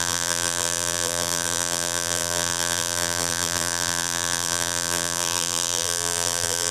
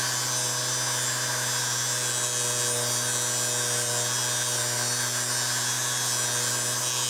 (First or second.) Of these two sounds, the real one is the second